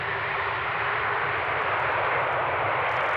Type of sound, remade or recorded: remade